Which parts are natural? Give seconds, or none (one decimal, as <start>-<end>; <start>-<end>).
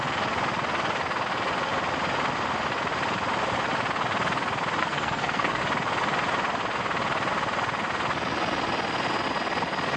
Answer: 0.0-4.8; 5.6-10.0